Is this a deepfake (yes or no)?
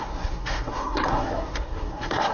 yes